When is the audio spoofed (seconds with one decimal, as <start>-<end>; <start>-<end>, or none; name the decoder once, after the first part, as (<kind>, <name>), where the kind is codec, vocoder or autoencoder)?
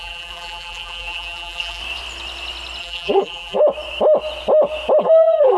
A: 0.0-1.8 (vocoder, BigVGAN v2); 2.8-3.6; 5.0-5.6